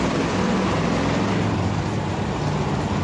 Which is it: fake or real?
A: real